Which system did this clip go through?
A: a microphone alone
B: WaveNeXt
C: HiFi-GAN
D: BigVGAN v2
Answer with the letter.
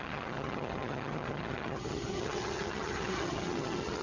C